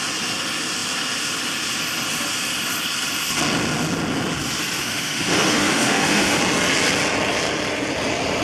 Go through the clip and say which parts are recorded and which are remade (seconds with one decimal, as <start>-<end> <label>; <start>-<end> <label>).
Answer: 0.0-4.8 recorded; 4.8-6.4 remade; 6.4-8.4 recorded